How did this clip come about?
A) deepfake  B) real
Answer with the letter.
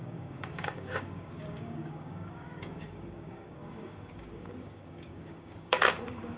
A